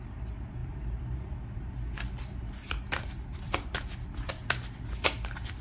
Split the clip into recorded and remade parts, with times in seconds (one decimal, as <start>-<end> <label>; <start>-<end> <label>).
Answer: 0.0-0.6 recorded; 0.6-1.7 remade; 1.7-3.3 recorded; 3.3-4.3 remade; 4.3-5.6 recorded